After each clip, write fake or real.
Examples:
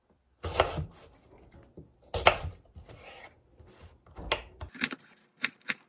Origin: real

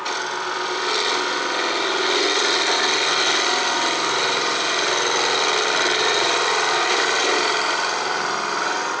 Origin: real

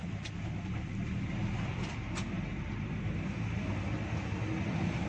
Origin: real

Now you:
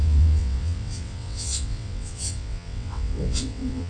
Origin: fake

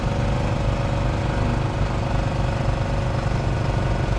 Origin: real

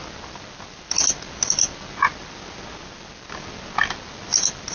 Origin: real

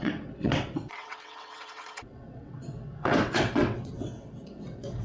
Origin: fake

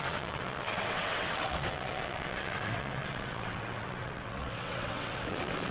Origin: fake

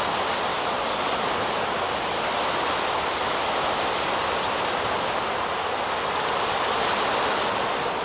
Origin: real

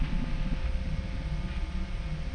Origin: real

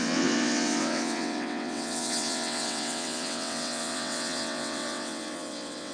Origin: fake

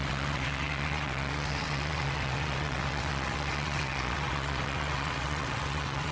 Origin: fake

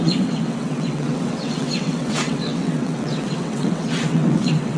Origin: fake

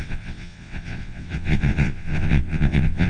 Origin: fake